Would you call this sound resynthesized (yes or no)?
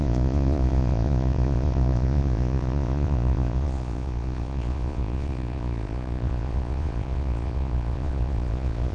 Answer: yes